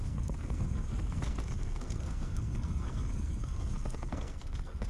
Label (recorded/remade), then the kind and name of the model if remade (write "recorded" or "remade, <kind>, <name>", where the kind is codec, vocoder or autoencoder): remade, codec, SNAC